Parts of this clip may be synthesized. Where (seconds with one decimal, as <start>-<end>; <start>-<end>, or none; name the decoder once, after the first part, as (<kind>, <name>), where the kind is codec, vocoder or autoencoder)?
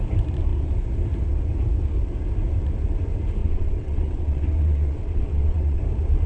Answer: 3.4-5.8 (vocoder, WaveNeXt)